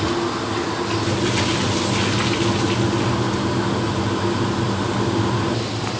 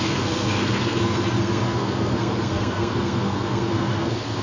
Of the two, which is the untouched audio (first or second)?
first